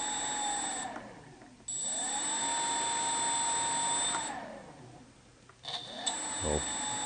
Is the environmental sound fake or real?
real